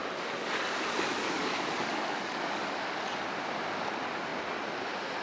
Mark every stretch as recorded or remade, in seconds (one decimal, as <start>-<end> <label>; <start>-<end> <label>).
0.0-3.1 remade; 3.1-5.2 recorded